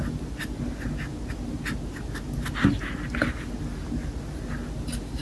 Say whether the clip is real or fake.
real